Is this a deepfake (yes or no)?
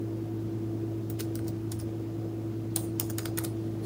no